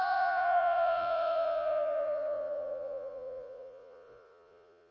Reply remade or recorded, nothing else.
remade